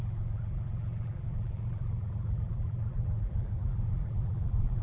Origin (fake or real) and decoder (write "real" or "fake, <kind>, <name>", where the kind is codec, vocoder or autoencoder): fake, vocoder, BigVGAN v2